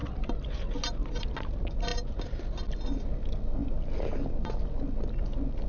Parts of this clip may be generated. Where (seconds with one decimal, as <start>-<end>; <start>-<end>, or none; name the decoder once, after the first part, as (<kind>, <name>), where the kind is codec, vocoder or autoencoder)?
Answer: none